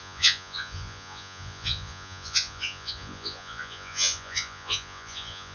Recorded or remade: remade